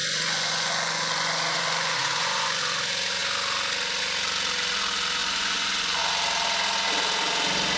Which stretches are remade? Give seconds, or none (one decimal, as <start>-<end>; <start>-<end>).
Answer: 0.0-2.6; 5.2-6.0